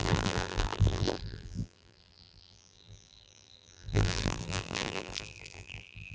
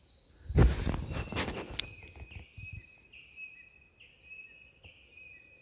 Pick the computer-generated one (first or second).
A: first